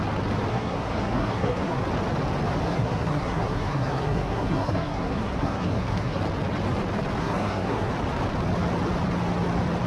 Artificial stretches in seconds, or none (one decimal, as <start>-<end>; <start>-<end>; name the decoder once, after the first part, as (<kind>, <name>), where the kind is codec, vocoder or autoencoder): 0.5-1.8 (codec, SNAC); 2.7-6.2; 7.2-7.9